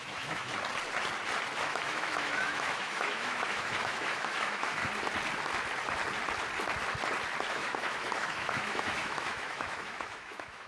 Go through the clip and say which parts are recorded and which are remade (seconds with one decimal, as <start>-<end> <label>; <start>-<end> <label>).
0.0-0.5 remade; 0.5-1.6 recorded; 1.6-4.8 remade; 4.8-7.5 recorded; 7.5-10.7 remade